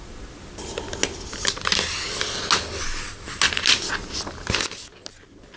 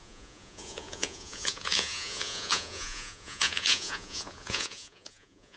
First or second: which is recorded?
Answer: first